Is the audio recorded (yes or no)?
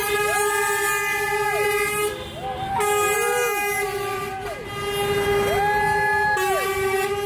yes